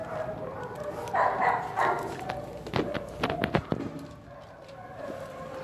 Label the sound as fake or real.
real